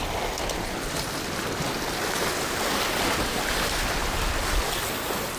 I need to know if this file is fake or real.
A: real